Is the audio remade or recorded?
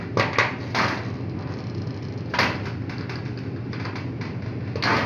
recorded